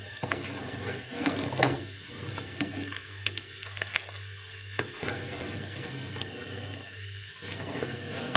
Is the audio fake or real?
fake